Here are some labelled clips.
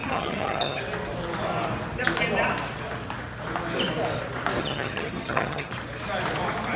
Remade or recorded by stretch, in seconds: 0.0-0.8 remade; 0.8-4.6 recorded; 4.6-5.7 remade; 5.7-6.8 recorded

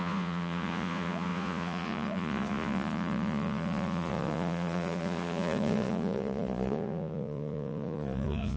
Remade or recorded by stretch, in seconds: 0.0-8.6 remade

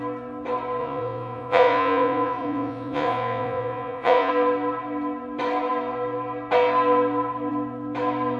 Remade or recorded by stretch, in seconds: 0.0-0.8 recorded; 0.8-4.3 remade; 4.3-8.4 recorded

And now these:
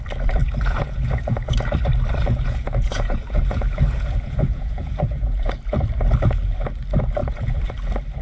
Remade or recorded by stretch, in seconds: 0.0-0.4 recorded; 0.4-1.5 remade; 1.5-2.2 recorded; 2.2-5.5 remade; 5.5-7.2 recorded; 7.2-7.7 remade; 7.7-8.2 recorded

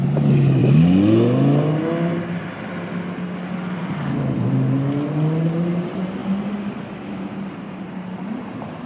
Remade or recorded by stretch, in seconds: 0.0-0.6 remade; 0.6-5.4 recorded; 5.4-6.2 remade; 6.2-7.1 recorded; 7.1-8.9 remade